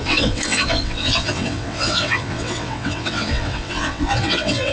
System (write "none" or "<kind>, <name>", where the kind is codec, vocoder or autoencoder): vocoder, WaveNeXt